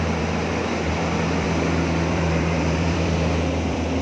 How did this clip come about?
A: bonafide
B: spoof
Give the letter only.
B